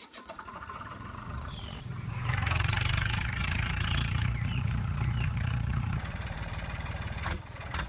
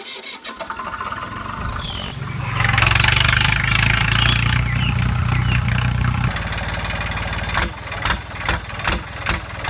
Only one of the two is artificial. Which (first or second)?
first